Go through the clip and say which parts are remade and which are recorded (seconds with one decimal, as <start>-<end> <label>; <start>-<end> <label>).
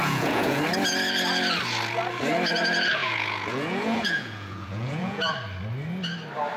0.0-0.6 remade; 0.6-3.0 recorded; 3.0-5.3 remade; 5.3-6.6 recorded